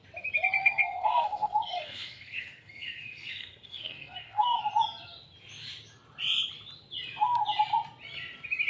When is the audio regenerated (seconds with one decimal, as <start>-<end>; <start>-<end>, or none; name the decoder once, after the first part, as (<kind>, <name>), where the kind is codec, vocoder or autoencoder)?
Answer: 0.6-4.6 (codec, SNAC)